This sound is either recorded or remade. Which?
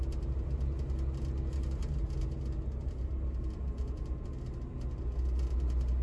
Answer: recorded